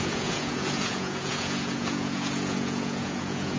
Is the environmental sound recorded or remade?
remade